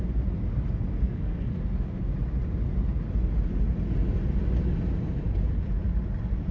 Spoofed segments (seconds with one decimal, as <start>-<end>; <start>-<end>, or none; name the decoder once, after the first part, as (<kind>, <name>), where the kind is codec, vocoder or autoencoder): 0.9-1.6 (codec, SNAC)